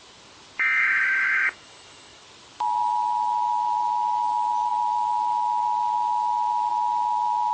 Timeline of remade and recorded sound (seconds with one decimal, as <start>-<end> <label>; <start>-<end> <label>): 0.0-0.8 recorded; 0.8-2.2 remade; 2.2-7.5 recorded